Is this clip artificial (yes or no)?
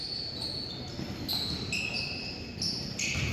no